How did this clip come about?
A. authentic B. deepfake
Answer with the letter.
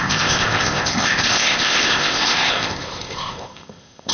B